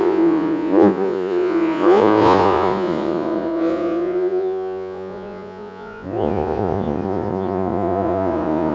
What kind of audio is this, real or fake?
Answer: fake